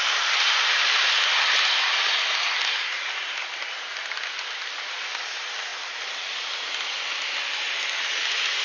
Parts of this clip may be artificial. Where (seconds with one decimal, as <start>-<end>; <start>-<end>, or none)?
none